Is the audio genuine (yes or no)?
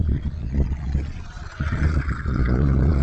no